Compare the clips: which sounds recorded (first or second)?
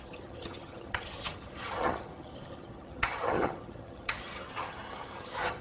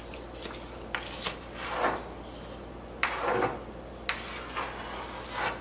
second